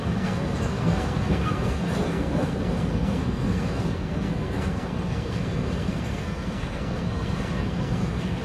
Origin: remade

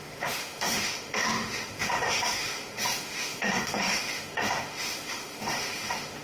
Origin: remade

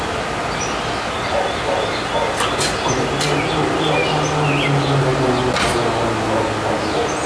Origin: recorded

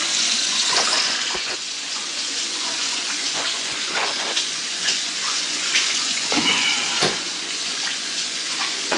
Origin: remade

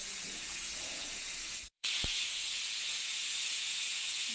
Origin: remade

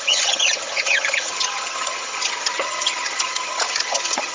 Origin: remade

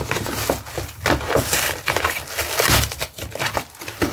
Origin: recorded